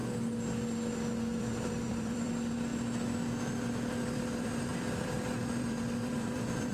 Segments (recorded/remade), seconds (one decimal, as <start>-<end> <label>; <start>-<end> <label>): 0.0-1.4 recorded; 1.4-2.7 remade; 2.7-4.0 recorded; 4.0-6.7 remade